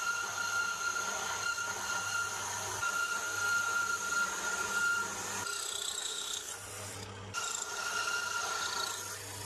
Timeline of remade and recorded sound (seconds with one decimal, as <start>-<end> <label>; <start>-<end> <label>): 0.0-6.0 recorded; 6.0-6.5 remade; 6.5-9.5 recorded

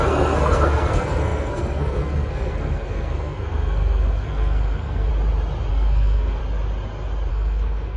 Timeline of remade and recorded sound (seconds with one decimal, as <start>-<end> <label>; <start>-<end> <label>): 0.0-5.1 remade; 5.1-5.7 recorded; 5.7-6.4 remade; 6.4-7.3 recorded; 7.3-8.0 remade

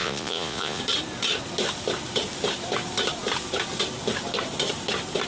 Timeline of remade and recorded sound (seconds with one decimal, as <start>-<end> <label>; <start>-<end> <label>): 0.0-0.8 remade; 0.8-5.3 recorded